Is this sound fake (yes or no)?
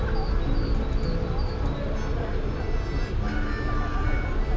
no